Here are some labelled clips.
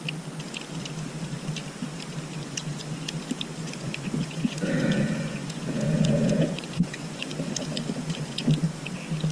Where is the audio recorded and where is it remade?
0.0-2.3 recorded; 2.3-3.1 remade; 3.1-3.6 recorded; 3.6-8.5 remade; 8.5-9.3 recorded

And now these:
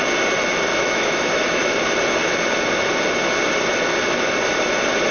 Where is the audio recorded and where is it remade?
0.0-0.7 recorded; 0.7-1.8 remade; 1.8-5.1 recorded

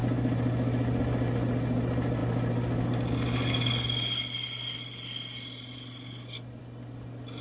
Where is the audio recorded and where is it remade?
0.0-7.4 recorded

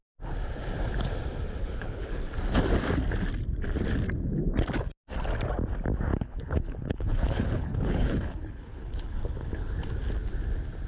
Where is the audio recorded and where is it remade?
0.0-1.6 recorded; 1.6-2.3 remade; 2.3-6.1 recorded; 6.1-9.7 remade; 9.7-10.9 recorded

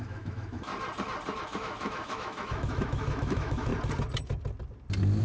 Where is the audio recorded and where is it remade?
0.0-0.7 remade; 0.7-1.4 recorded; 1.4-3.7 remade; 3.7-5.2 recorded

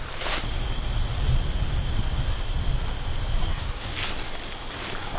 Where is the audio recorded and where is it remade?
0.0-3.4 recorded; 3.4-3.9 remade; 3.9-5.2 recorded